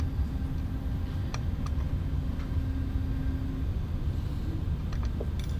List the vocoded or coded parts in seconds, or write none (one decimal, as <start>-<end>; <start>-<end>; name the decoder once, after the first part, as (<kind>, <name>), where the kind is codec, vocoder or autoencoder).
none